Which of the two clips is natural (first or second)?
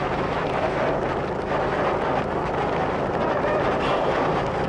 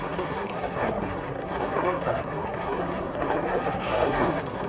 first